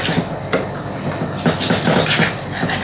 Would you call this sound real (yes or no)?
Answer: yes